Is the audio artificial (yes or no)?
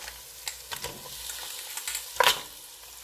no